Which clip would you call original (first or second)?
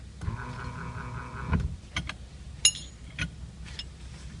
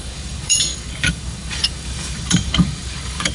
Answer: first